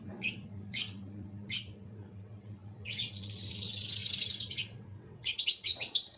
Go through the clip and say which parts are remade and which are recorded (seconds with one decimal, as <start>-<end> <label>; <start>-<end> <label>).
0.0-6.2 remade